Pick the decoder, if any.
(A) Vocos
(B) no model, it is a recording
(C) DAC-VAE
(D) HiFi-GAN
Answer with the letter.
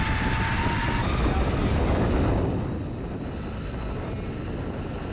B